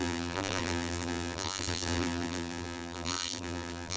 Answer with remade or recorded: remade